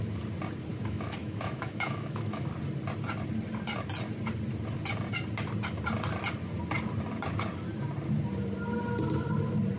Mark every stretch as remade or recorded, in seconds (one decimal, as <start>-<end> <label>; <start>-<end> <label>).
0.0-0.7 recorded; 0.7-2.5 remade; 2.5-9.8 recorded